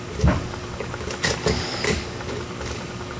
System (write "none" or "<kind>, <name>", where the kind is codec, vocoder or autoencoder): codec, DAC